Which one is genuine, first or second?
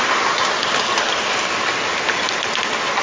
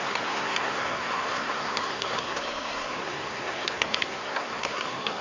first